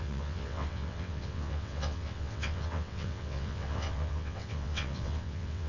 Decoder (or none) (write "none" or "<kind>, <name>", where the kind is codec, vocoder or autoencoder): vocoder, WaveNeXt